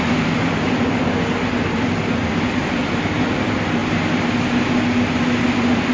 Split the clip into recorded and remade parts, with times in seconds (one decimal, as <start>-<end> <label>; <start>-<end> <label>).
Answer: 0.0-3.8 remade; 3.8-5.4 recorded; 5.4-5.9 remade